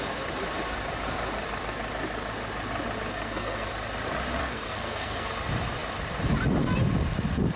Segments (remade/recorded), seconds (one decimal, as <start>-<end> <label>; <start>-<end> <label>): 0.0-3.1 recorded; 3.1-3.7 remade; 3.7-4.4 recorded; 4.4-5.3 remade; 5.3-7.6 recorded